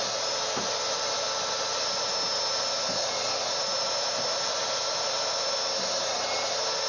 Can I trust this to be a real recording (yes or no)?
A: yes